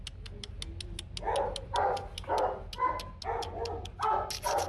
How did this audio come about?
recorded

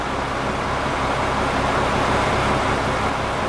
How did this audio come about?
recorded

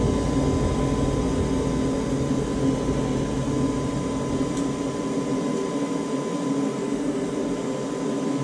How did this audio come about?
recorded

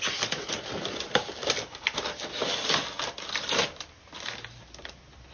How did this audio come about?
recorded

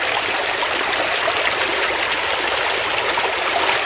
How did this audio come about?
recorded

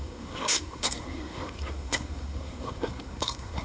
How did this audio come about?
remade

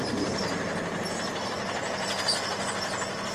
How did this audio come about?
recorded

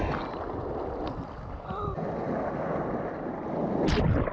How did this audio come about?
recorded